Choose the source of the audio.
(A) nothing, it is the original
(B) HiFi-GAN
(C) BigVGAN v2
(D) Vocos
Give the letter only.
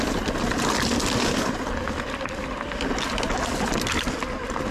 A